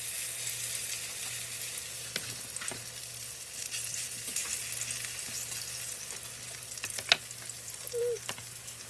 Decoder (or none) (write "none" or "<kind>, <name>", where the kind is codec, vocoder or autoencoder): none